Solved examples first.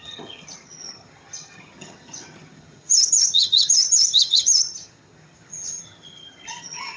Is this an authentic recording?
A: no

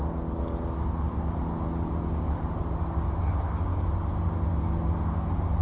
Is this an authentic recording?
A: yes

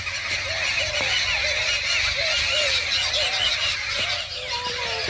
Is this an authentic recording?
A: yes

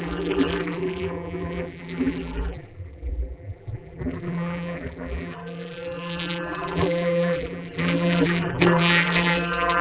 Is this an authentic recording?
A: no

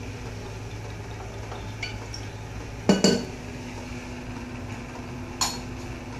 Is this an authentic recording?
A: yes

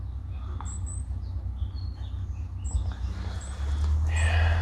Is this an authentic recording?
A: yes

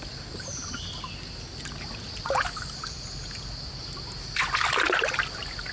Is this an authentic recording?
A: yes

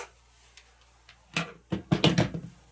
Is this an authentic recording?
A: yes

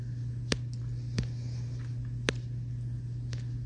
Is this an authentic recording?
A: yes